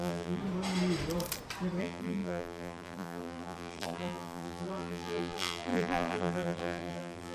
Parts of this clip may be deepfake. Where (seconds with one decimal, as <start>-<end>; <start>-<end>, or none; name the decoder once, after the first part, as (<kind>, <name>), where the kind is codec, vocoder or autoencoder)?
0.0-0.4 (vocoder, BigVGAN v2); 1.8-7.3